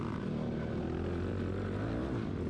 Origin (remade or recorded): recorded